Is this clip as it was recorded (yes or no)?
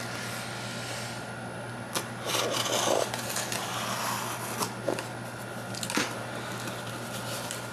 yes